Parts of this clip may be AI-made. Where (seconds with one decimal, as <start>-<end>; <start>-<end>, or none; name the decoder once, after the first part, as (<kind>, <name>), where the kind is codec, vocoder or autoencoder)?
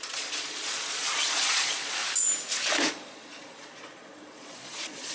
0.0-2.0 (vocoder, Vocos); 2.9-5.1